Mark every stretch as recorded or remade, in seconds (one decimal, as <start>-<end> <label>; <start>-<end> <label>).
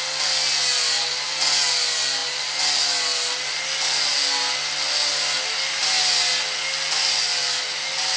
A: 0.0-8.2 recorded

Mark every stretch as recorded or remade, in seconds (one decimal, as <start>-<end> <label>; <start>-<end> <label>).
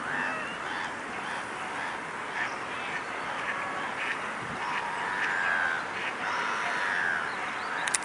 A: 0.0-8.0 remade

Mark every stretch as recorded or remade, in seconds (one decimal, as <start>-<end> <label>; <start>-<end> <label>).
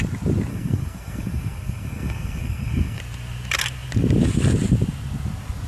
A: 0.0-0.5 recorded; 0.5-3.0 remade; 3.0-5.7 recorded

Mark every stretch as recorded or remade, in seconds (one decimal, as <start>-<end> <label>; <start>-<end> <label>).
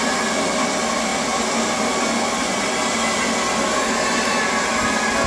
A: 0.0-5.3 recorded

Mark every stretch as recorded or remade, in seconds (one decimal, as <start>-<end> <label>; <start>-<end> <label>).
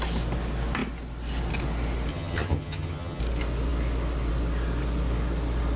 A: 0.0-2.1 recorded; 2.1-3.2 remade; 3.2-5.8 recorded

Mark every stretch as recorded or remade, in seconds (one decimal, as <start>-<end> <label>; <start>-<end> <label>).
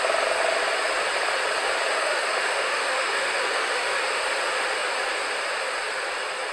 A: 0.0-1.9 recorded; 1.9-4.2 remade; 4.2-6.5 recorded